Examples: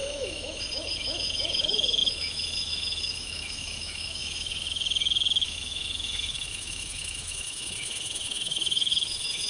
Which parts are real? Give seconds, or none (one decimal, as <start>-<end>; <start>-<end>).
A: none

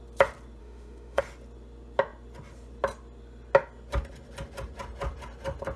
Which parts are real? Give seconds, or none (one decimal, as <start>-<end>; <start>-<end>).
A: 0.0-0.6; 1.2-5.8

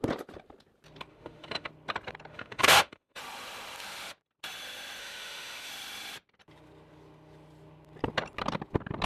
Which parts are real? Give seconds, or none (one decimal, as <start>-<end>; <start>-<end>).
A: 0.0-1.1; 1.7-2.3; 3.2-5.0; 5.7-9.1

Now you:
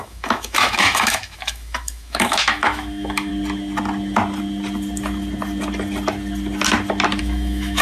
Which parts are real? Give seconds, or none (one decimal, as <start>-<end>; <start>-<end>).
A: 3.3-7.2

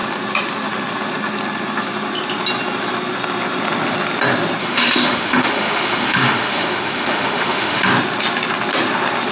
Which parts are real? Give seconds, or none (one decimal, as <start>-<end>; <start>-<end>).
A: 0.0-4.6; 7.8-9.3

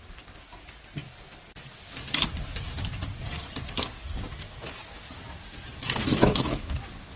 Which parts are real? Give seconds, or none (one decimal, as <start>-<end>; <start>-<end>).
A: 0.0-6.1; 6.7-7.2